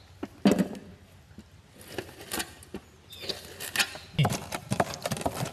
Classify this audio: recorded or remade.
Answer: recorded